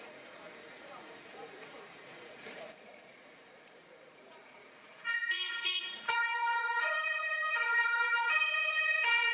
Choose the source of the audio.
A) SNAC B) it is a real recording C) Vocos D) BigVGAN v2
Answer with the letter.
C